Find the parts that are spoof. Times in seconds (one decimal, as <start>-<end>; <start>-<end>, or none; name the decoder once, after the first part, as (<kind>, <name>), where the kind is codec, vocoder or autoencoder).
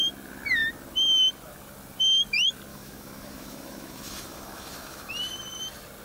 2.7-5.1 (autoencoder, DAC-VAE)